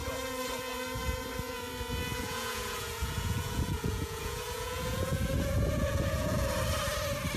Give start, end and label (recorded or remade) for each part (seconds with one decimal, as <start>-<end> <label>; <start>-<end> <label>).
0.0-2.1 recorded; 2.1-6.5 remade; 6.5-7.4 recorded